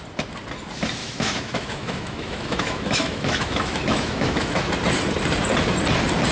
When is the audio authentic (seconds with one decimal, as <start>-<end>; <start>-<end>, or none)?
0.0-1.0; 4.7-6.3